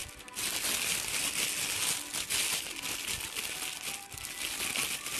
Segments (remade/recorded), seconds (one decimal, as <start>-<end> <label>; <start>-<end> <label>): 0.0-5.2 recorded